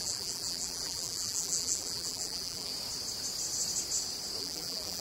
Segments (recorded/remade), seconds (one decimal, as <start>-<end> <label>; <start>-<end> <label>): 0.0-2.7 remade; 2.7-4.4 recorded; 4.4-5.0 remade